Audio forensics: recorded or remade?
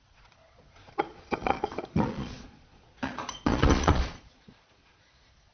remade